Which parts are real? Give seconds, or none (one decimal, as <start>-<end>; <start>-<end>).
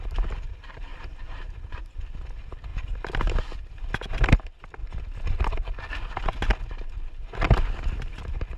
0.0-0.9; 1.8-8.6